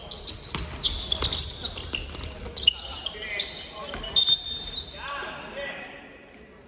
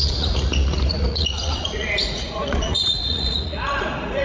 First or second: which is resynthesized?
second